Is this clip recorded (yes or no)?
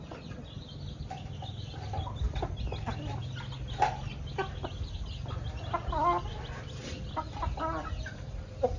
yes